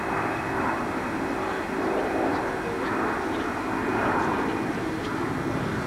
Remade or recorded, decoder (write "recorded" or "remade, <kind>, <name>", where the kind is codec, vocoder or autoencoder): recorded